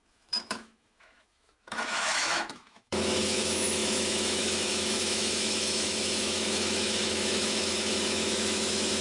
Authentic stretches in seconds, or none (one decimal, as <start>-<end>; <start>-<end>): none